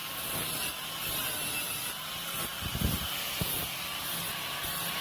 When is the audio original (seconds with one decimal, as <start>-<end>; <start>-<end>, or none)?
0.0-5.0